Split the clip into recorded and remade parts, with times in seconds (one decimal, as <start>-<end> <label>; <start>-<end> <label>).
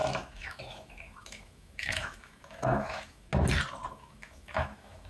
0.0-3.3 remade; 3.3-3.9 recorded; 3.9-5.1 remade